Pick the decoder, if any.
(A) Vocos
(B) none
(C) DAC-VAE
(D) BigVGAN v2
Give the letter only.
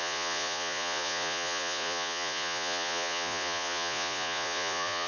A